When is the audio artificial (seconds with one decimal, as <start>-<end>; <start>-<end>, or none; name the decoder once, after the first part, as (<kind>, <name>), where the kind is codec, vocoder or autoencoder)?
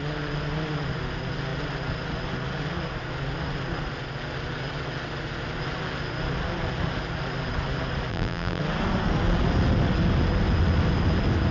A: 8.1-8.6 (vocoder, BigVGAN v2)